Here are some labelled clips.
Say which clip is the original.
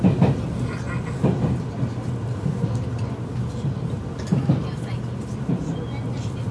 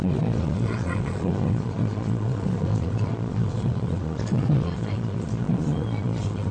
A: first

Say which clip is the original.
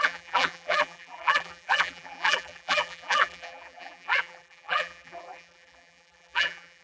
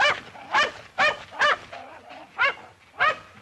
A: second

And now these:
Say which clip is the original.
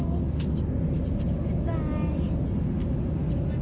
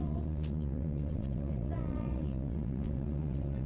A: first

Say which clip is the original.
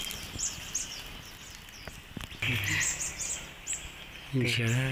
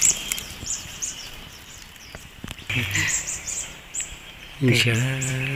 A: first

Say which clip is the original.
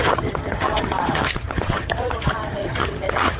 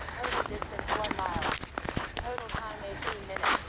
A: second